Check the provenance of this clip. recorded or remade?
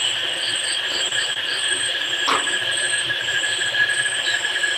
remade